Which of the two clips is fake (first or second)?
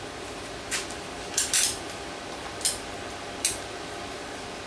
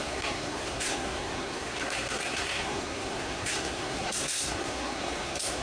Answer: second